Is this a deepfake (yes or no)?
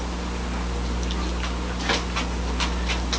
no